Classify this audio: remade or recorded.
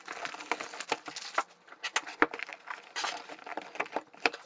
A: recorded